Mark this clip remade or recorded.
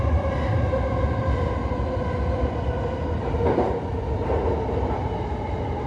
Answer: recorded